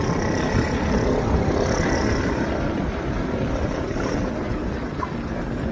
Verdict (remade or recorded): recorded